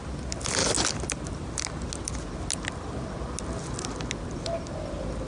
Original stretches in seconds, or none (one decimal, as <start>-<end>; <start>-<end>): 0.0-5.3

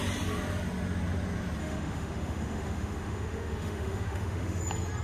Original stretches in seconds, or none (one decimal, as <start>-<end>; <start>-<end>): 0.0-1.6; 4.6-5.0

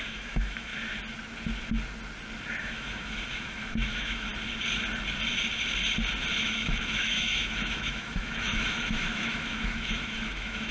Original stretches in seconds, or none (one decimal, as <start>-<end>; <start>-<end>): 0.7-2.6; 4.3-6.4

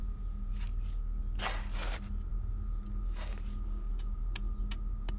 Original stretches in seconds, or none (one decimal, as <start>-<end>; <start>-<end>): 0.0-5.2

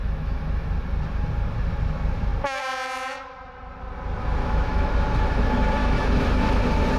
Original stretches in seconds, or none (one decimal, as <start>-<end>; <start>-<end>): 0.7-4.4; 4.9-5.8; 6.6-7.0

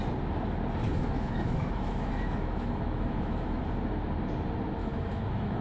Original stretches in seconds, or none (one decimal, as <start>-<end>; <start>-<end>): 0.0-0.9; 3.6-4.8

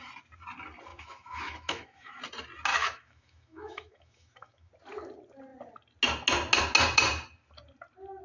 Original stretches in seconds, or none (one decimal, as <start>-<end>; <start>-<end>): 0.0-0.9; 2.2-2.7; 4.7-8.2